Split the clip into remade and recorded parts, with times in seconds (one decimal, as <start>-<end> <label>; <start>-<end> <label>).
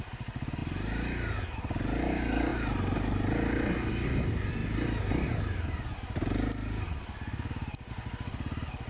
0.0-8.9 recorded